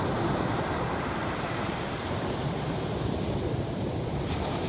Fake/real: fake